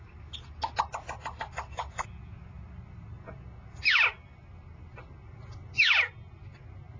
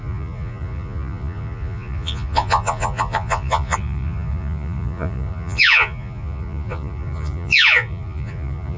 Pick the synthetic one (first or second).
second